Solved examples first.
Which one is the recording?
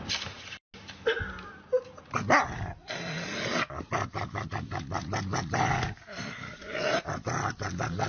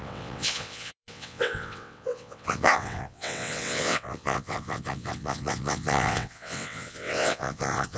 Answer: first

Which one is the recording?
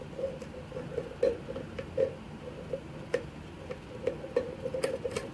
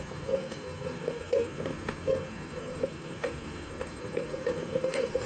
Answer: first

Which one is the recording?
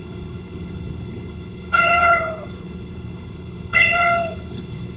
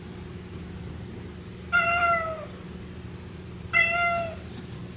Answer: second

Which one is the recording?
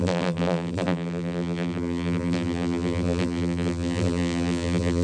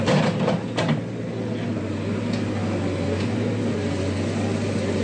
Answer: second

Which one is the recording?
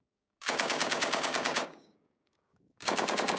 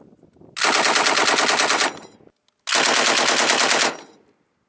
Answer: second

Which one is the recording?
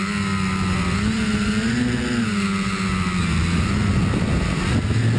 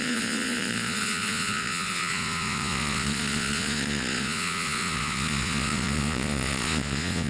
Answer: first